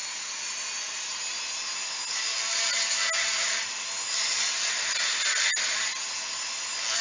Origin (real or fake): real